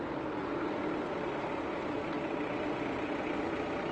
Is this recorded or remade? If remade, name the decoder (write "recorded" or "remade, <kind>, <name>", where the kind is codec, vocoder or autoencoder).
recorded